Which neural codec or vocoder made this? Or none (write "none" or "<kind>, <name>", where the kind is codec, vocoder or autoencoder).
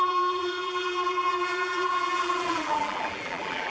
vocoder, BigVGAN v2